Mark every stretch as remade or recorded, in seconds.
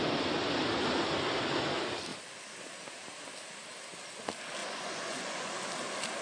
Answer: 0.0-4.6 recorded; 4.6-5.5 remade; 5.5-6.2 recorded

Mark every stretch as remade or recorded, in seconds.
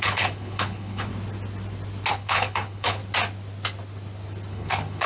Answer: 0.0-1.1 remade; 1.1-2.1 recorded; 2.1-3.0 remade; 3.0-4.5 recorded; 4.5-5.1 remade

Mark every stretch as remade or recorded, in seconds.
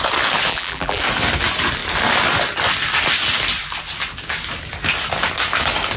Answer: 0.0-0.5 recorded; 0.5-1.0 remade; 1.0-6.0 recorded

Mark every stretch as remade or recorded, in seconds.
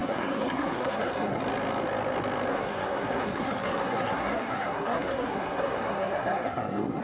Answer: 0.0-1.4 remade; 1.4-2.5 recorded; 2.5-7.0 remade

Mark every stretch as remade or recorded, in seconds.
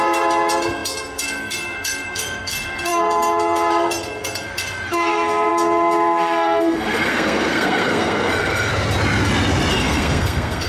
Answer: 0.0-8.7 remade; 8.7-9.7 recorded; 9.7-10.7 remade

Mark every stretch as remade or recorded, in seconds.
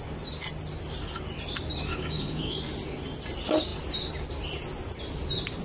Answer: 0.0-1.9 recorded; 1.9-2.5 remade; 2.5-5.6 recorded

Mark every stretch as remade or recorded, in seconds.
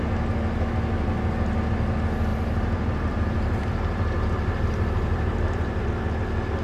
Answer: 0.0-2.3 recorded; 2.3-5.8 remade; 5.8-6.6 recorded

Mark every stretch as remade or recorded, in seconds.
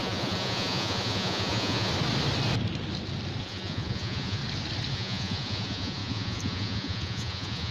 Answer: 0.0-1.9 remade; 1.9-3.4 recorded; 3.4-4.4 remade; 4.4-4.9 recorded; 4.9-7.7 remade